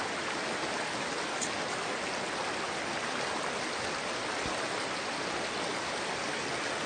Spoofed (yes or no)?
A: no